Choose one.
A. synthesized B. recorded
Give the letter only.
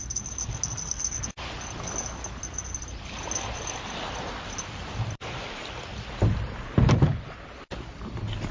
B